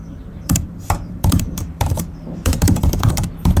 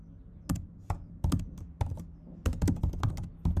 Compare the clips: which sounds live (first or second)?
second